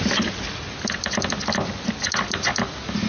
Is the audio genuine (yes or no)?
yes